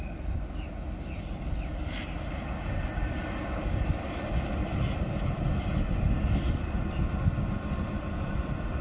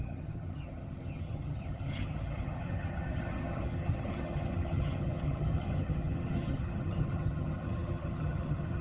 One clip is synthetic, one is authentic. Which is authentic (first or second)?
first